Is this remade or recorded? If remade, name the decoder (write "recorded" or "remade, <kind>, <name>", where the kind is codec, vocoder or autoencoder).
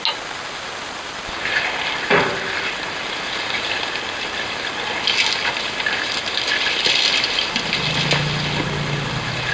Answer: recorded